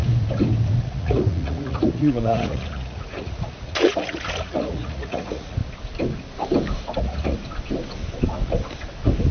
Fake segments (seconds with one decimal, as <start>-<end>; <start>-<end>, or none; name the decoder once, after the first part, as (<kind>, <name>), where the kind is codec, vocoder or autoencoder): 0.8-5.6 (vocoder, Vocos); 7.0-7.4